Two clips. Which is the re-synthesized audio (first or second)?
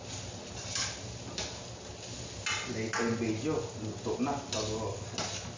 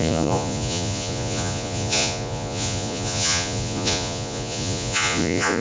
second